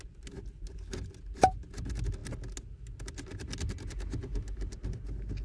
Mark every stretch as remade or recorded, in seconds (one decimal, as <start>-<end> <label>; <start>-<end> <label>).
0.0-5.4 recorded